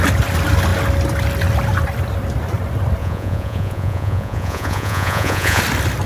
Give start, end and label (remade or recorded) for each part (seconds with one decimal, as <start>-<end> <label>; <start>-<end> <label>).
0.0-3.0 recorded; 3.0-5.6 remade; 5.6-6.1 recorded